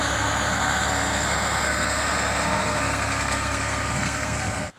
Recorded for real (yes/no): no